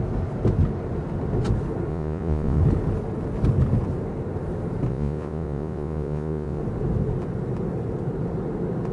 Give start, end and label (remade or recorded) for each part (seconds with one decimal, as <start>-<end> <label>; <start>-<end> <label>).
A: 0.0-1.9 recorded; 1.9-2.6 remade; 2.6-4.9 recorded; 4.9-6.6 remade; 6.6-8.9 recorded

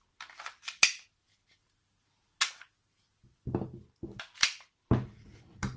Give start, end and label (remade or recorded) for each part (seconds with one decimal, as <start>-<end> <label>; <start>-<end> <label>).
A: 0.0-5.8 recorded

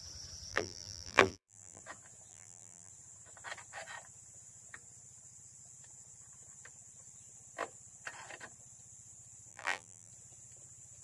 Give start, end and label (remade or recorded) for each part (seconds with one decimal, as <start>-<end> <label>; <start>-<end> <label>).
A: 0.0-0.5 recorded; 0.5-1.8 remade; 1.8-2.3 recorded; 2.3-2.9 remade; 2.9-9.5 recorded; 9.5-10.1 remade; 10.1-11.0 recorded

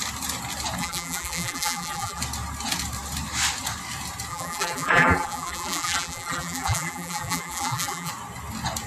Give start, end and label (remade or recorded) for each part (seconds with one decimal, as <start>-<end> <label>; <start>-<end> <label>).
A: 0.0-0.8 recorded; 0.8-2.2 remade; 2.2-4.3 recorded; 4.3-8.1 remade; 8.1-8.9 recorded

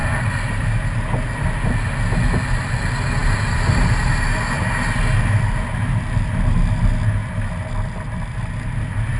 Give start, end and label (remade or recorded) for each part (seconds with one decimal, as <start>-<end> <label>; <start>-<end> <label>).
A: 0.0-9.2 recorded

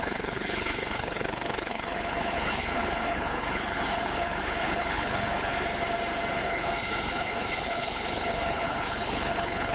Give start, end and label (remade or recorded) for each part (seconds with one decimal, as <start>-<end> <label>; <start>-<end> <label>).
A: 0.0-5.5 remade; 5.5-6.3 recorded; 6.3-9.7 remade

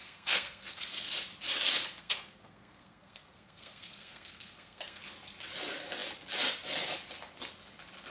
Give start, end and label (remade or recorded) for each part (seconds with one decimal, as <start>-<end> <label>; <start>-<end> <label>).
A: 0.0-0.9 remade; 0.9-2.0 recorded; 2.0-5.0 remade; 5.0-8.1 recorded